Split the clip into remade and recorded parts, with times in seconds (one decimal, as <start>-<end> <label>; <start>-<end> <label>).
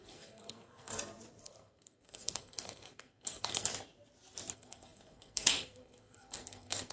0.0-0.9 remade; 0.9-1.4 recorded; 1.4-3.7 remade; 3.7-4.5 recorded; 4.5-6.9 remade